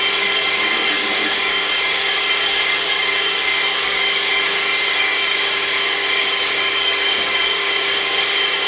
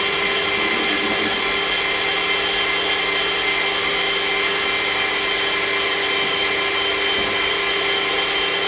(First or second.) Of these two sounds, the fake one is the first